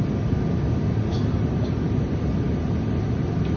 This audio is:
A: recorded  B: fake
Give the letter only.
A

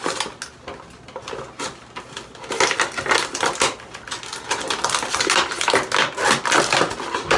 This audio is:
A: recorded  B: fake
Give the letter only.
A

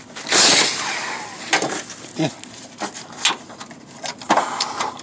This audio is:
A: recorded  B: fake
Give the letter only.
A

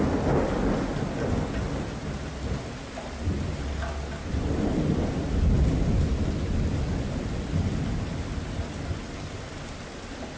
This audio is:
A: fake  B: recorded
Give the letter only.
B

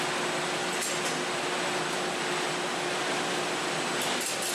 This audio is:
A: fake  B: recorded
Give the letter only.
B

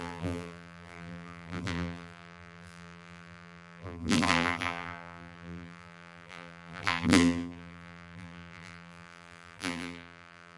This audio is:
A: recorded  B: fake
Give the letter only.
B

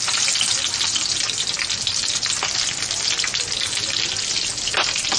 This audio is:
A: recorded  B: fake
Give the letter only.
A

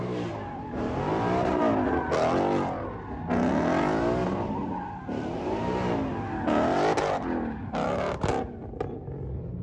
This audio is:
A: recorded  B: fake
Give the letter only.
A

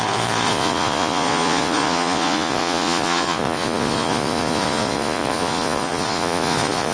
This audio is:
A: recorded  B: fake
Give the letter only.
B